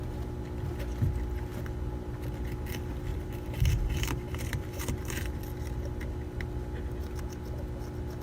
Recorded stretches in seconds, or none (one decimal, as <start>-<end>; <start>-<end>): 0.0-3.1; 5.4-8.2

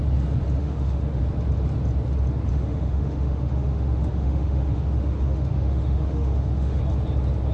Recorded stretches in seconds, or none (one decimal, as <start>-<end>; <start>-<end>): 0.0-0.6; 1.2-2.5; 6.8-7.5

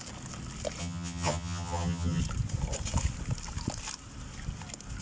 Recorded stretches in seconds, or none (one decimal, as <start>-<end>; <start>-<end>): 0.0-0.8; 2.2-5.0

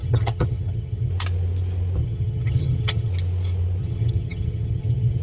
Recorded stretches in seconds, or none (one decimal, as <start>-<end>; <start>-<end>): 1.1-2.0; 3.1-3.8

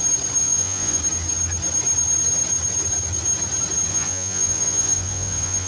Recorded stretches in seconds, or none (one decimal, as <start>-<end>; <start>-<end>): 0.0-0.4; 1.0-3.9

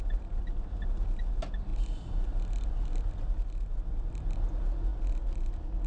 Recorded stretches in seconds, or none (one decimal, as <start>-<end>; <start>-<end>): 0.0-5.9

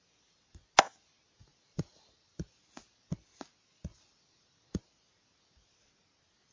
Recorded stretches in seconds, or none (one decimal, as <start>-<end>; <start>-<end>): 0.0-1.4; 2.6-3.9; 4.8-6.5

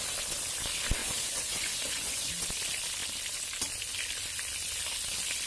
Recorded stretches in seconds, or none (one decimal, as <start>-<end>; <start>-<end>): 0.0-1.0; 2.3-5.5